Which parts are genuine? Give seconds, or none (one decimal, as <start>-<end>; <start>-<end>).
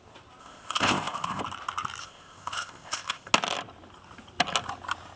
0.0-0.4; 1.4-2.0; 3.3-5.2